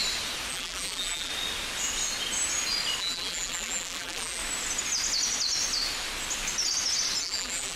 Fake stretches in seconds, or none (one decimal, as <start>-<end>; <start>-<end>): 0.5-1.3; 3.0-4.4; 7.2-7.8